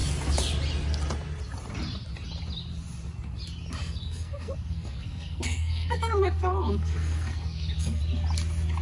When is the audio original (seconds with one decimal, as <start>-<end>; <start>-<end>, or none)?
0.0-3.8; 8.0-8.8